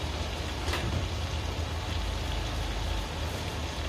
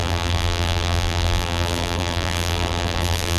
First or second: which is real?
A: first